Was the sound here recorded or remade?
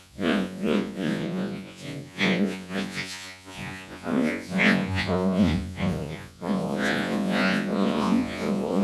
remade